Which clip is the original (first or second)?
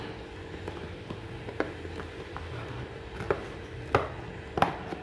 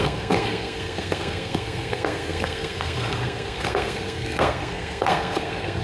first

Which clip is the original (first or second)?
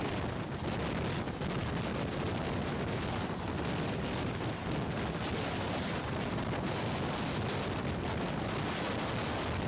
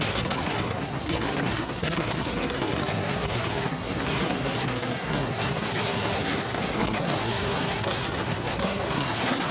first